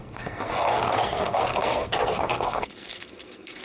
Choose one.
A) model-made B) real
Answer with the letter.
A